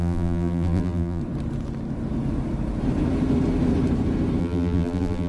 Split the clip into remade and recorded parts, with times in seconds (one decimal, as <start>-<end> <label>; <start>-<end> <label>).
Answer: 0.0-1.2 remade; 1.2-4.4 recorded; 4.4-5.3 remade